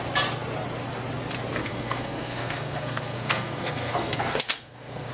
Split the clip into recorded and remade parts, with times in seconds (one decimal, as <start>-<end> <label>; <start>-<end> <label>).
0.0-1.6 recorded; 1.6-5.1 remade